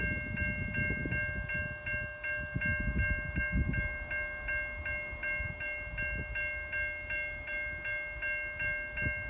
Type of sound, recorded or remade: recorded